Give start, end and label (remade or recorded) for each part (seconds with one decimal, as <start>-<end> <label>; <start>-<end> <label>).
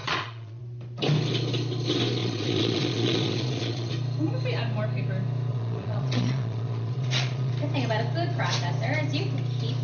0.0-0.6 remade; 0.6-2.2 recorded; 2.2-3.9 remade; 3.9-5.5 recorded; 5.5-7.5 remade; 7.5-9.8 recorded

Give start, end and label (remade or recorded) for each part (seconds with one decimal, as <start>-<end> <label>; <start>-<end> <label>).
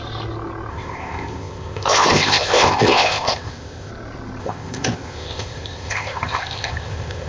0.0-0.7 recorded; 0.7-3.9 remade; 3.9-4.4 recorded; 4.4-7.3 remade